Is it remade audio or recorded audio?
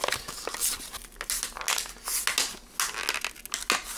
recorded